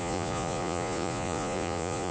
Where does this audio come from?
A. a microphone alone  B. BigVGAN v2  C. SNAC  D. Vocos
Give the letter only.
D